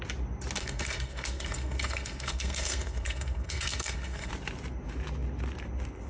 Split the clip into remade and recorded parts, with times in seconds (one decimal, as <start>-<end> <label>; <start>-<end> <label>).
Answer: 0.0-0.6 recorded; 0.6-4.3 remade; 4.3-6.1 recorded